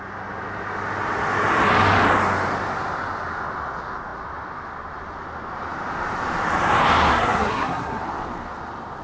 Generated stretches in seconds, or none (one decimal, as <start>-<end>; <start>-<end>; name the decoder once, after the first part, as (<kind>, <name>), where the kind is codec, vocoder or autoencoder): 7.1-8.0 (codec, SNAC)